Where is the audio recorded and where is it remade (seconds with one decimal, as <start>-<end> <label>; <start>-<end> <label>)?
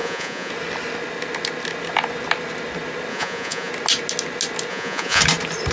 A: 0.0-0.5 remade; 0.5-3.1 recorded; 3.1-3.7 remade; 3.7-4.7 recorded; 4.7-5.2 remade; 5.2-5.7 recorded